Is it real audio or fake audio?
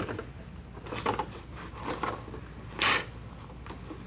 real